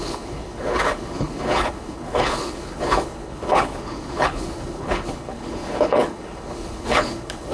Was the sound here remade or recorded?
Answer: remade